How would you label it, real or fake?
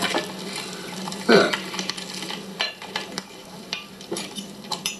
fake